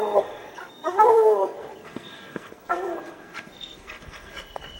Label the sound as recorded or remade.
remade